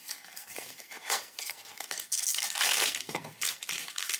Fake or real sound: fake